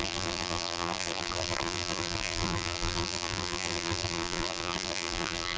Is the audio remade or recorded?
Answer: remade